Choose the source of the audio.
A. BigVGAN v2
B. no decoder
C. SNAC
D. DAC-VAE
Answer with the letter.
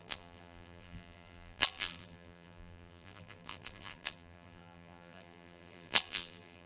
A